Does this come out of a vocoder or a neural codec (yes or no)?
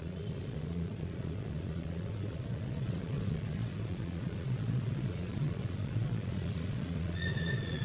yes